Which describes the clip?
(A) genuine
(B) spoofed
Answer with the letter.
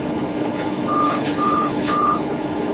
B